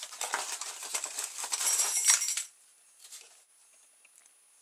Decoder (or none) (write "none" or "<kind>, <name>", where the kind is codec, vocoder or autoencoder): none